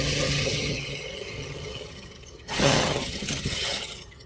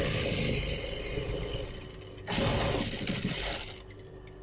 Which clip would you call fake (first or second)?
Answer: first